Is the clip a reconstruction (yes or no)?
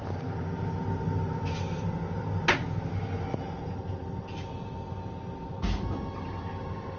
no